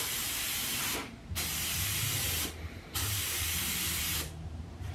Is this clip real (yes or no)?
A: no